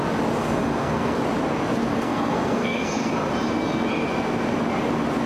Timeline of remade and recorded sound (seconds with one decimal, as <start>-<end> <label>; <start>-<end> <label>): 0.0-0.4 recorded; 0.4-1.2 remade; 1.2-1.9 recorded; 1.9-3.1 remade; 3.1-5.3 recorded